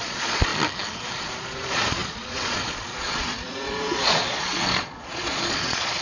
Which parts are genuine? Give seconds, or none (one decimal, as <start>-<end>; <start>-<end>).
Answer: 0.5-1.2